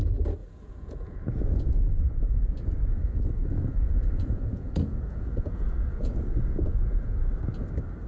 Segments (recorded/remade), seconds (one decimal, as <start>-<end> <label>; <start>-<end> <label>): 0.0-0.4 recorded; 0.4-1.9 remade; 1.9-3.4 recorded; 3.4-7.3 remade; 7.3-8.1 recorded

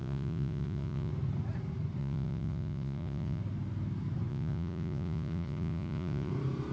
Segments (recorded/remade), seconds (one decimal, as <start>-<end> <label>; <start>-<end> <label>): 0.0-1.1 remade; 1.1-2.0 recorded; 2.0-3.4 remade; 3.4-4.3 recorded; 4.3-6.3 remade; 6.3-6.7 recorded

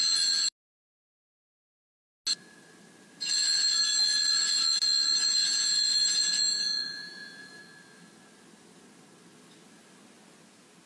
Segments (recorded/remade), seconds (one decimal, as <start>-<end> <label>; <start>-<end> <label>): 0.0-5.5 recorded; 5.5-7.6 remade; 7.6-10.9 recorded

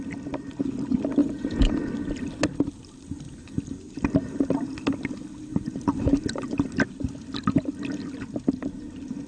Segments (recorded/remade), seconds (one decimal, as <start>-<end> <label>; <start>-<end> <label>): 0.0-1.2 recorded; 1.2-1.8 remade; 1.8-9.3 recorded

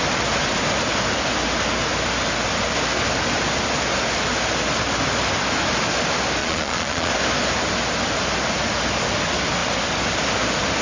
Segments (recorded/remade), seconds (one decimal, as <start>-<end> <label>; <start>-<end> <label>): 0.0-6.4 recorded; 6.4-7.1 remade; 7.1-10.8 recorded

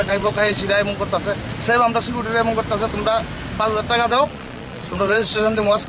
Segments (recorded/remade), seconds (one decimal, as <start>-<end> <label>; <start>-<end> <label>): 0.0-0.6 remade; 0.6-4.1 recorded; 4.1-5.9 remade